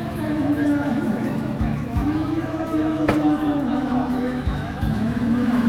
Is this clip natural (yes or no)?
no